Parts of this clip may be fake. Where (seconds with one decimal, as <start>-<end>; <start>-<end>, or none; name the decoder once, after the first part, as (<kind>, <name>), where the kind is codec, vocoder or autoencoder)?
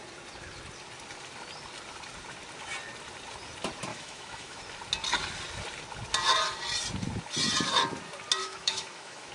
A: 3.9-4.6 (autoencoder, DAC-VAE); 8.4-9.3